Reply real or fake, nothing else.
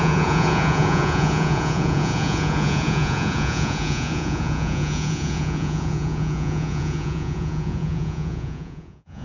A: fake